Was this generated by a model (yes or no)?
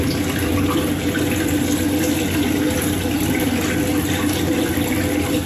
no